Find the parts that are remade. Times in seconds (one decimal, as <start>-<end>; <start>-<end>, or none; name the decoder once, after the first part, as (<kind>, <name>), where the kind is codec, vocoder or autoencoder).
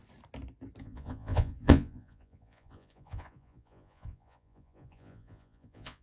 0.8-6.0 (vocoder, Vocos)